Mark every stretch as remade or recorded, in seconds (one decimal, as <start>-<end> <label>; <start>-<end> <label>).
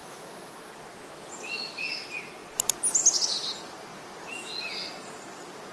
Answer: 0.0-0.7 remade; 0.7-5.7 recorded